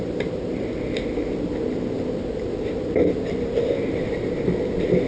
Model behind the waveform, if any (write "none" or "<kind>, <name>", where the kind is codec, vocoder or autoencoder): none